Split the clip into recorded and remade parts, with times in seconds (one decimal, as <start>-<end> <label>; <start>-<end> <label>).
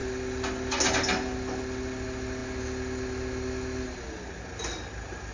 0.0-5.3 recorded